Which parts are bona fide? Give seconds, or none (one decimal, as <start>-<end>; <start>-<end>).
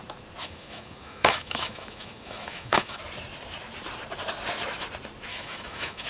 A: 0.0-0.4; 3.0-5.3